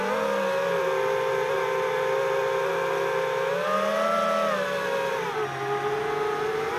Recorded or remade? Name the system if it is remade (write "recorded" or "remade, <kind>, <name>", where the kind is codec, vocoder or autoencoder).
recorded